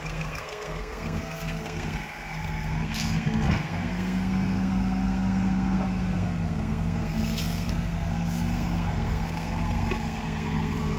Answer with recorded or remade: remade